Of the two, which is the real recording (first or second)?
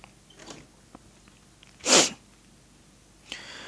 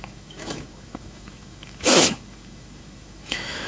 first